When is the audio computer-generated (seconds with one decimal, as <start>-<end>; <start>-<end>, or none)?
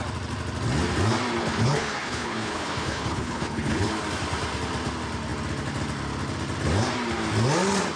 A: 1.4-3.9